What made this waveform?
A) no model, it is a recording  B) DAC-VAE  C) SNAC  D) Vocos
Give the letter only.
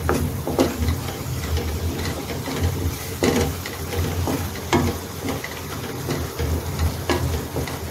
A